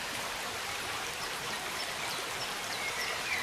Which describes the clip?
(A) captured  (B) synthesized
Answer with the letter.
B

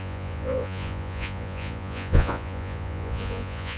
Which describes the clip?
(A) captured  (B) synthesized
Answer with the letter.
B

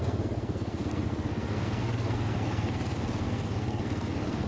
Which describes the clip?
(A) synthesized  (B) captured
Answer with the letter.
A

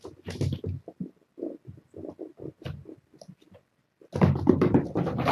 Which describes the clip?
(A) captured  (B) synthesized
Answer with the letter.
A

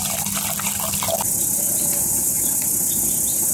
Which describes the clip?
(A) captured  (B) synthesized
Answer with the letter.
A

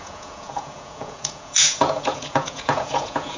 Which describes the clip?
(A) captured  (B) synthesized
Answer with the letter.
B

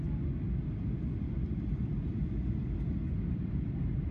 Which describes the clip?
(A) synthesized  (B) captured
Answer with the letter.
B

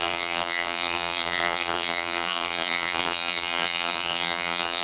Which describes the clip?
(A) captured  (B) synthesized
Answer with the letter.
B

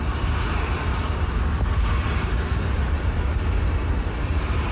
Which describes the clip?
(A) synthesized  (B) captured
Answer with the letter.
B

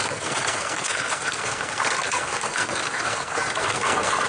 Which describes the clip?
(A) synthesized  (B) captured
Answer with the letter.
A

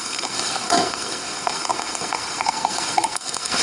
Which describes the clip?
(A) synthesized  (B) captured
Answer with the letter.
A